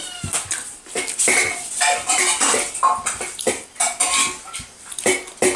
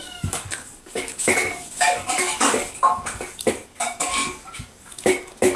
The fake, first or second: second